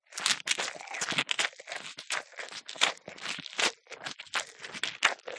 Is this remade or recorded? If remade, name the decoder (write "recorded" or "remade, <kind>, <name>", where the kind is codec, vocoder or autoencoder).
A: recorded